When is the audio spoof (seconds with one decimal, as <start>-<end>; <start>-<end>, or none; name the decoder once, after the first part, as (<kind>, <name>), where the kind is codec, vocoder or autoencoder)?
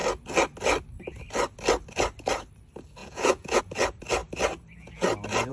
3.0-3.6 (vocoder, Vocos)